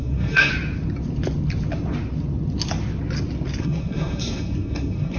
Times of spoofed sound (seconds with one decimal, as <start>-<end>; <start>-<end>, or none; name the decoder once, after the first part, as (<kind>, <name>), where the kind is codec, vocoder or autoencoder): 0.0-0.5 (codec, SNAC); 3.6-5.2